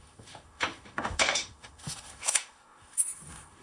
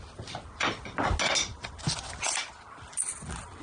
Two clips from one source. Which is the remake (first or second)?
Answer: first